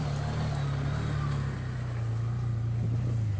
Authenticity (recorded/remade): recorded